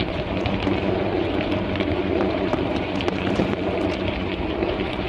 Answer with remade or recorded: remade